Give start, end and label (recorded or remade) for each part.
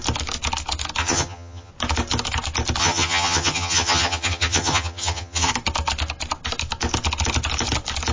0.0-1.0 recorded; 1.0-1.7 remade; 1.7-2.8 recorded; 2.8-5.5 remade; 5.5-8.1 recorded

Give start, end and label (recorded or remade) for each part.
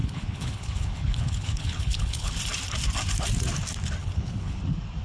0.0-2.3 remade; 2.3-4.0 recorded; 4.0-4.6 remade; 4.6-5.0 recorded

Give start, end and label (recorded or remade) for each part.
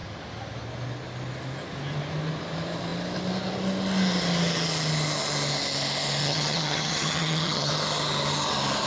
0.0-6.2 recorded; 6.2-7.7 remade; 7.7-8.9 recorded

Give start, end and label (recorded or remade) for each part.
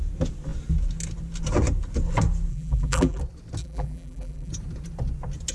0.0-2.5 recorded; 2.5-3.2 remade; 3.2-3.6 recorded; 3.6-4.5 remade; 4.5-5.5 recorded